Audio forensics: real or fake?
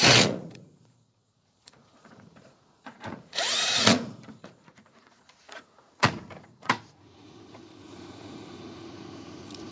fake